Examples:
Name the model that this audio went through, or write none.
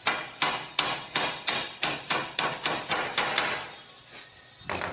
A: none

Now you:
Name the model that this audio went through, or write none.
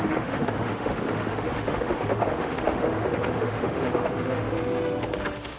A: autoencoder, DAC-VAE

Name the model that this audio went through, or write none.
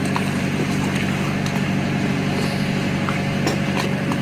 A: none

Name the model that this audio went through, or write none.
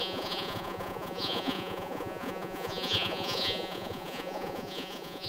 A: vocoder, Vocos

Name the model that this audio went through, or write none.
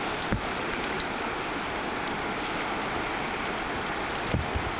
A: none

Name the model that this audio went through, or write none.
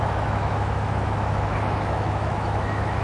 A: autoencoder, DAC-VAE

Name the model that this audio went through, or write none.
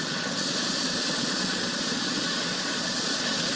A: vocoder, Vocos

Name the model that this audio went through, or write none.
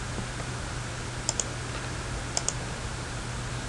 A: none